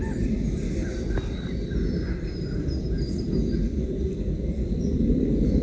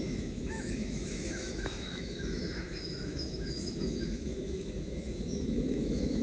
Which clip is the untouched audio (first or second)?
first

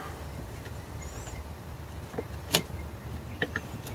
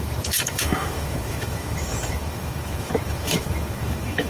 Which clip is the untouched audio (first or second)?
first